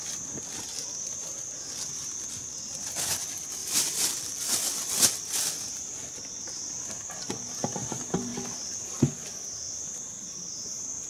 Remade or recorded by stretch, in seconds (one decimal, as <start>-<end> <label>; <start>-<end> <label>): 0.0-3.6 recorded; 3.6-5.7 remade; 5.7-11.1 recorded